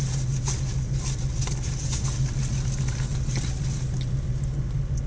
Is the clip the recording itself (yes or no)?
yes